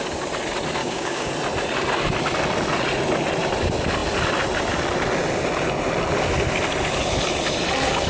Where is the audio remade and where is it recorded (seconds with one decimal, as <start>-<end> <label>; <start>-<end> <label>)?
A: 0.0-0.8 recorded; 0.8-1.3 remade; 1.3-8.1 recorded